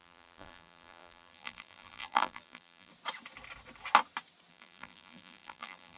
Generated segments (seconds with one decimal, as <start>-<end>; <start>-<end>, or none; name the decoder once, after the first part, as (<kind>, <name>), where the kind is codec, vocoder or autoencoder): 0.0-2.9 (vocoder, BigVGAN v2); 4.5-6.0